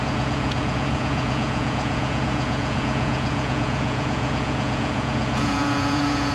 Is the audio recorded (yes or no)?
no